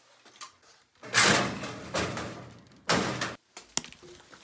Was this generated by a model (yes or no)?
no